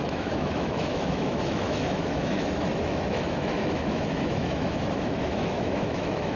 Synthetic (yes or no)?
yes